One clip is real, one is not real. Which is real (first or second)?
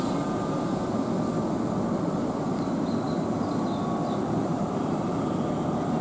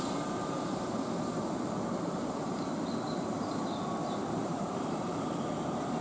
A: first